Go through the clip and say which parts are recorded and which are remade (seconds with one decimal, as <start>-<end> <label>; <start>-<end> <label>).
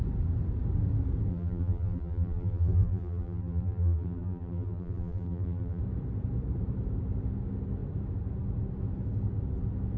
0.0-1.3 recorded; 1.3-5.8 remade; 5.8-10.0 recorded